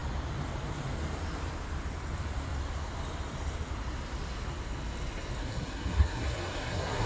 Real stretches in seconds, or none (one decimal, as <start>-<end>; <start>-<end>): 0.0-5.4